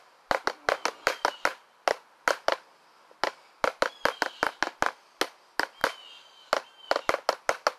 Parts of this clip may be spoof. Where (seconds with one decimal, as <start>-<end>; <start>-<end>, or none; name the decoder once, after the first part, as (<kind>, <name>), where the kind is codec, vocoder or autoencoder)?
none